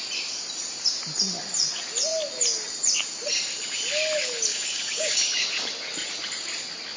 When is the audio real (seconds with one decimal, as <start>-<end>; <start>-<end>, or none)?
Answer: 0.0-4.5; 5.4-7.0